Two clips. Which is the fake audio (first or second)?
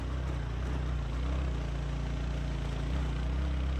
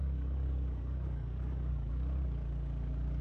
second